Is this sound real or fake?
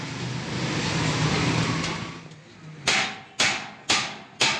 real